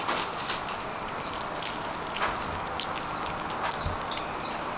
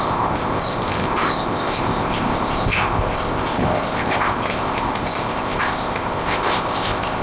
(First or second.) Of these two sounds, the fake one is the second